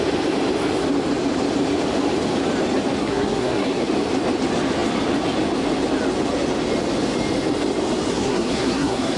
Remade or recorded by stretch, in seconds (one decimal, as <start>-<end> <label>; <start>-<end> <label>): 0.0-3.0 recorded; 3.0-3.9 remade; 3.9-8.1 recorded; 8.1-9.2 remade

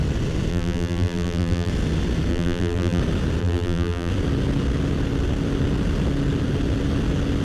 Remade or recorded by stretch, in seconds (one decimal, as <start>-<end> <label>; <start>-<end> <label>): 0.0-0.5 recorded; 0.5-1.7 remade; 1.7-2.3 recorded; 2.3-3.0 remade; 3.0-3.4 recorded; 3.4-4.1 remade; 4.1-7.4 recorded

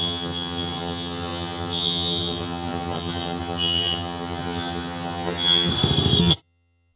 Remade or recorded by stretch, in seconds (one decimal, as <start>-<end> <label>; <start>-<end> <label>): 0.0-5.7 remade; 5.7-6.2 recorded; 6.2-7.0 remade

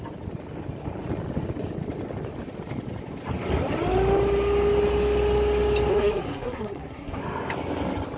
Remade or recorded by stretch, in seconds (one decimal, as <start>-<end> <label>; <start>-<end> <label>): 0.0-5.9 recorded; 5.9-7.2 remade; 7.2-8.2 recorded

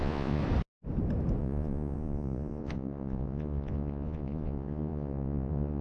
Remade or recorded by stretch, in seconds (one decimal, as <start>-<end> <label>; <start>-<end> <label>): 0.0-0.4 remade; 0.4-1.4 recorded; 1.4-5.8 remade